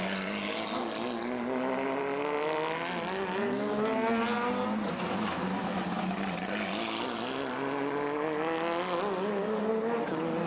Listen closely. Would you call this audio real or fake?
real